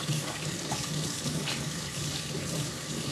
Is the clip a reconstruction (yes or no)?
yes